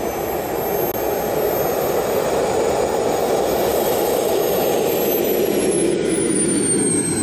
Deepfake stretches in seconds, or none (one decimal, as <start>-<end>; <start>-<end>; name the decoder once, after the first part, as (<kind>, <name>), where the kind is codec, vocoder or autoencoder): 3.7-4.3 (vocoder, BigVGAN v2)